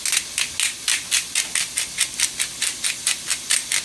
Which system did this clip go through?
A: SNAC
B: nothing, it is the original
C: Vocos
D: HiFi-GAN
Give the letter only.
B